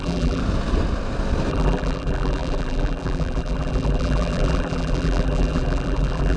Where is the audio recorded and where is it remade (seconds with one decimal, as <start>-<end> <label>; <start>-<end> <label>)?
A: 0.0-0.4 remade; 0.4-1.5 recorded; 1.5-6.4 remade